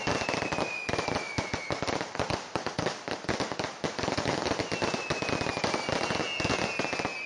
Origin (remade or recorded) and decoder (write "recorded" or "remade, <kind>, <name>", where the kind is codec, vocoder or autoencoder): recorded